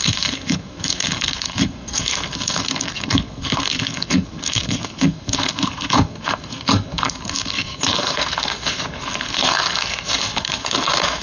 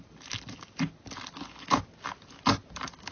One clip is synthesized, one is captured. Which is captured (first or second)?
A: second